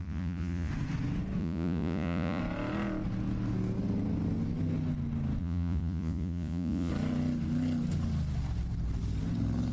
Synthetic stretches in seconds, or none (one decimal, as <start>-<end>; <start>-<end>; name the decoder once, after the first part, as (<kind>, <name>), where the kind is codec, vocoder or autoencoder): 0.0-0.7 (vocoder, Vocos); 1.4-2.4; 5.4-6.9

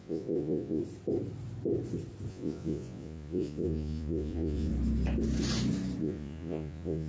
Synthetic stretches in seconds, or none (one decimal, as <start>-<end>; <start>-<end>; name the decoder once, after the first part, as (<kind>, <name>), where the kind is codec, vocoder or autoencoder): 0.0-0.8 (vocoder, Vocos); 2.3-4.7; 6.0-7.1

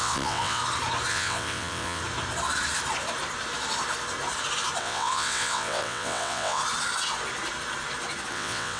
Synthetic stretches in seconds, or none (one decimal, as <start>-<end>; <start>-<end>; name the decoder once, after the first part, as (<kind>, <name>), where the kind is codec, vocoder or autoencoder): 0.0-0.6 (vocoder, WaveNeXt); 1.1-2.0; 4.8-6.6; 8.3-8.8

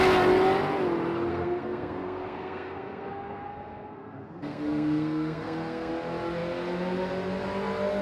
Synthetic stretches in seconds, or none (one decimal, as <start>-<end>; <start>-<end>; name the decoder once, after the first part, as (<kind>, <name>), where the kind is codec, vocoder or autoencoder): 1.3-5.9 (codec, SNAC)

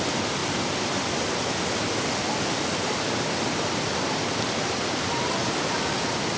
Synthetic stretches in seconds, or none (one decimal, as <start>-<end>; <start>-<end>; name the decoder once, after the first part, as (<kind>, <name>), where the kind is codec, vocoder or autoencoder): none